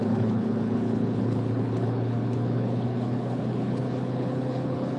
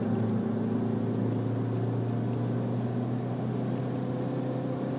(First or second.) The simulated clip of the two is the first